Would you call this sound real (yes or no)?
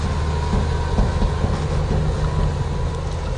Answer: yes